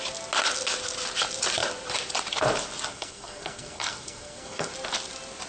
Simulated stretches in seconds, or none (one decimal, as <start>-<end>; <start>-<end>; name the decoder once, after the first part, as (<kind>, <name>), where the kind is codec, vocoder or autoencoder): 2.9-4.7 (codec, SNAC)